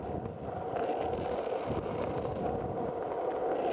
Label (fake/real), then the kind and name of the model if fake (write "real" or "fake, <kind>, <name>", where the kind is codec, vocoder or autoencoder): real